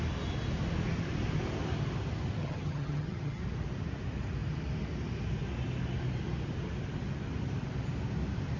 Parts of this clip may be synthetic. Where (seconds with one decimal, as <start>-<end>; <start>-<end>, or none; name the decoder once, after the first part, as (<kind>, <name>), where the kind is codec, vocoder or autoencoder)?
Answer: 2.4-3.4 (vocoder, HiFi-GAN)

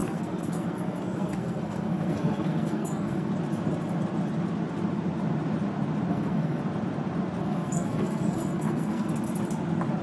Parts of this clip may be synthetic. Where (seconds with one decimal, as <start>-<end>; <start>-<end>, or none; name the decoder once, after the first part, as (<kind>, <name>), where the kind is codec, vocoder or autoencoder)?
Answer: 0.0-3.3 (codec, SNAC); 6.1-6.6; 7.4-9.1

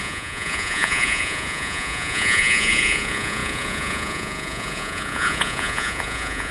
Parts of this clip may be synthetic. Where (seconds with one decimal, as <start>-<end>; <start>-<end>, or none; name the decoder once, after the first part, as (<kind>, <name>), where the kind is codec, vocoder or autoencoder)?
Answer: 0.0-6.5 (vocoder, Vocos)

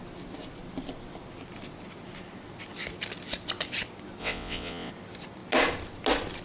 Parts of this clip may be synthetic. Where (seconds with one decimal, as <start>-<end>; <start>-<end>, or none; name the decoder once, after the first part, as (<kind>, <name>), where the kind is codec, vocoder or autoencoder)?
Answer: 4.2-4.9 (vocoder, WaveNeXt)